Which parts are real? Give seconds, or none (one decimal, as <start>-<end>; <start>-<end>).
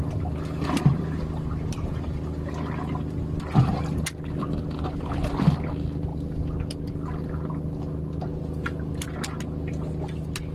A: 0.0-10.5